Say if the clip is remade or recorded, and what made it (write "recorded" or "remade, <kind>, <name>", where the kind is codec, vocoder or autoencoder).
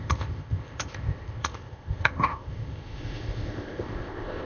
remade, codec, ZipCodec